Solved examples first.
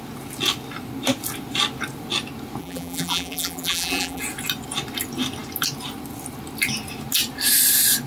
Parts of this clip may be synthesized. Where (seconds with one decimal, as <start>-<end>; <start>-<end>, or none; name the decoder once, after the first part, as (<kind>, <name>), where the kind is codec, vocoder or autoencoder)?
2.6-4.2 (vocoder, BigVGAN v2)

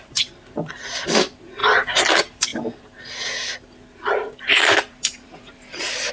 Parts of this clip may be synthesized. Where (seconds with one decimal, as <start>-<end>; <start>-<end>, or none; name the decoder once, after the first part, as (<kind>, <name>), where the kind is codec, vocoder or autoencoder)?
0.0-1.6 (vocoder, BigVGAN v2); 2.1-6.1

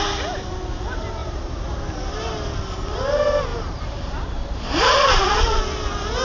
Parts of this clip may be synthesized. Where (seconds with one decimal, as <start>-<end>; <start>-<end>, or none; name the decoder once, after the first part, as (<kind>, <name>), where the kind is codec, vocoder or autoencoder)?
1.2-2.3 (vocoder, BigVGAN v2); 3.5-5.6